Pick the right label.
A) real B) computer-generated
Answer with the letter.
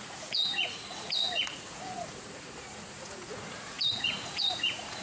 B